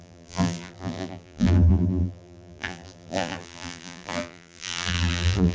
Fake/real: fake